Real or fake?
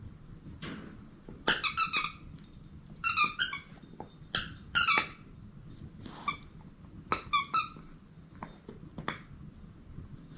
real